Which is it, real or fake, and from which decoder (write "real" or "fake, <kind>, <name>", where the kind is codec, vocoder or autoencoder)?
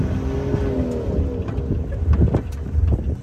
real